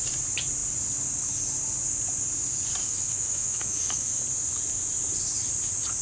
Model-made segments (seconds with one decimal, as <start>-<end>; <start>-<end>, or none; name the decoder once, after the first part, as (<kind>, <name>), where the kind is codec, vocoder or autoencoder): 2.8-4.2 (autoencoder, DAC-VAE)